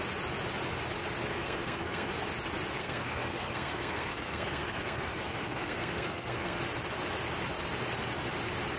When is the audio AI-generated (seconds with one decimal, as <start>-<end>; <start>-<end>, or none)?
1.3-2.1; 2.8-6.6